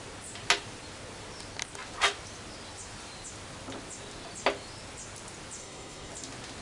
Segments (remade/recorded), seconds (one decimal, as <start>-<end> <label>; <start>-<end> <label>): 0.0-5.6 recorded; 5.6-6.1 remade; 6.1-6.6 recorded